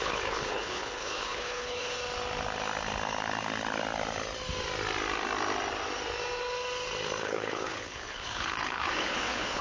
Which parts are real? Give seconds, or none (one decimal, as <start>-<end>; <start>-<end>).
2.0-7.2